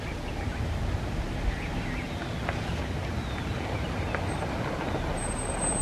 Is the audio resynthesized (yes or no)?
no